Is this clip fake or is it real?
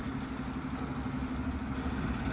real